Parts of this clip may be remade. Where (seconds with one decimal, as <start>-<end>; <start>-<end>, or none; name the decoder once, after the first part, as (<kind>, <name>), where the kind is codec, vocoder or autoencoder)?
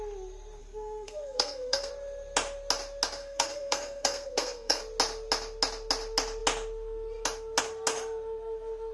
0.6-1.9 (codec, SNAC); 3.2-4.8